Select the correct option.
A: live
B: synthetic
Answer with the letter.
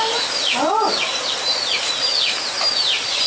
A